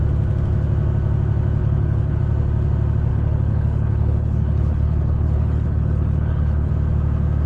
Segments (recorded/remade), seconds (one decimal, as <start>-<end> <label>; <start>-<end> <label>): 0.0-1.6 recorded; 1.6-2.2 remade; 2.2-3.1 recorded; 3.1-6.7 remade; 6.7-7.5 recorded